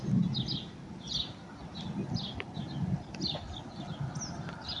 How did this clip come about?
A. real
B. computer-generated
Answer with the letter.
A